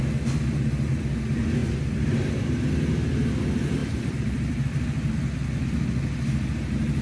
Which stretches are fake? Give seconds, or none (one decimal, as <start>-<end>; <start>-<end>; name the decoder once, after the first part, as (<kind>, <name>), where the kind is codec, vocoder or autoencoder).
1.6-2.7 (vocoder, BigVGAN v2); 3.8-5.1